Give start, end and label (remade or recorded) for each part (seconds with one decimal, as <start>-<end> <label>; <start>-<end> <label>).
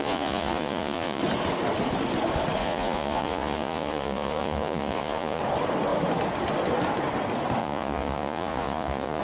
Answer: 0.0-1.2 remade; 1.2-2.6 recorded; 2.6-5.4 remade; 5.4-7.6 recorded; 7.6-9.2 remade